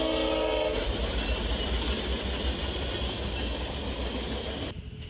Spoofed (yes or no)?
no